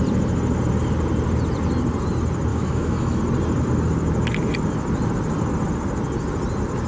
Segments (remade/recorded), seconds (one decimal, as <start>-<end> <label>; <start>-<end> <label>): 0.0-2.5 recorded; 2.5-3.2 remade; 3.2-6.9 recorded